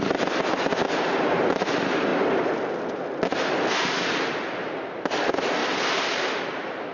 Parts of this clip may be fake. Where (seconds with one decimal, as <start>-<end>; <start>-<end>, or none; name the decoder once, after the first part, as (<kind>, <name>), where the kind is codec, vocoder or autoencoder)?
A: 5.6-6.4 (vocoder, BigVGAN v2)